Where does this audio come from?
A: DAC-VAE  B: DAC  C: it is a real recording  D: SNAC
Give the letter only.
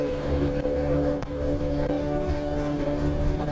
B